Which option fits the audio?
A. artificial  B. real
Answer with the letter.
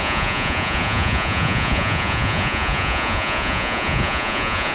A